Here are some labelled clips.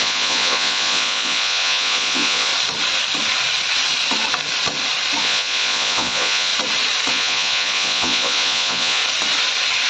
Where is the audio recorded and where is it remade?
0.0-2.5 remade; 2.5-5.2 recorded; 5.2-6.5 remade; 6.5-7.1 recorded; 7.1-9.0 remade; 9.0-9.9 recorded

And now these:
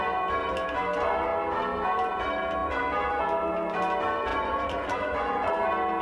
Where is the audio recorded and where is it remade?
0.0-4.3 recorded; 4.3-5.5 remade; 5.5-6.0 recorded